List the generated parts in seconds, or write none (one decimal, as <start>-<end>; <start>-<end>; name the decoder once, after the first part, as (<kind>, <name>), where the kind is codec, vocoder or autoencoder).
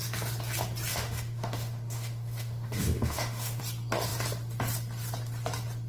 0.9-3.6 (autoencoder, DAC-VAE)